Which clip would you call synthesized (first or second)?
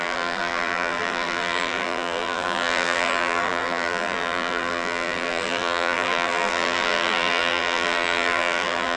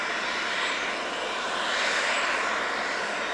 first